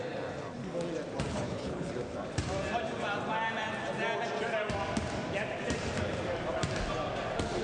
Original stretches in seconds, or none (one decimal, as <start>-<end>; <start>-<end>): 0.0-1.3; 1.9-7.6